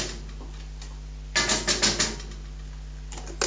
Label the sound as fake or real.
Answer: real